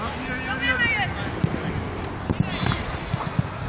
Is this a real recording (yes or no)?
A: yes